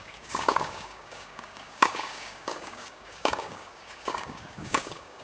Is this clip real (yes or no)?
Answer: no